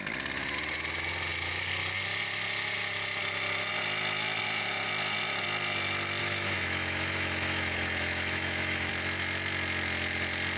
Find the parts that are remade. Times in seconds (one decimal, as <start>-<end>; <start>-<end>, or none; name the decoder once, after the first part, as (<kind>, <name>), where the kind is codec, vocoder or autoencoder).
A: 6.2-8.9 (autoencoder, DAC-VAE)